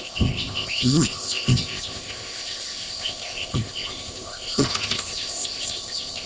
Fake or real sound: fake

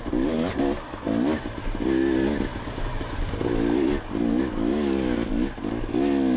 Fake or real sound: real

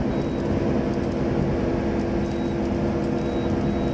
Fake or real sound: real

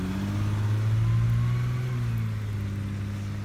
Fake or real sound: real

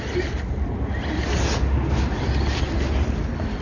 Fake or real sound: real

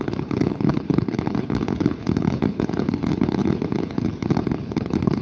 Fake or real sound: fake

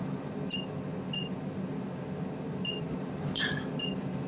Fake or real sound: real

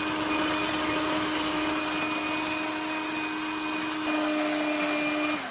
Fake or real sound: real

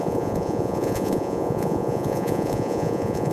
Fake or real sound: fake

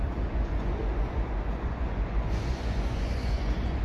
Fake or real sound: fake